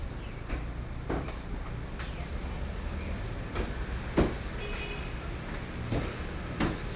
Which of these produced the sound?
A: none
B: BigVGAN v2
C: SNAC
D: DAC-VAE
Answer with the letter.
A